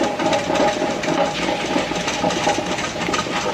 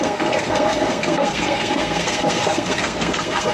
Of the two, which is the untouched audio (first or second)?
first